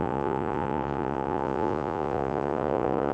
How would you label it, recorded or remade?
remade